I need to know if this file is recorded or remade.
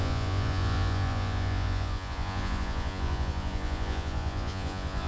remade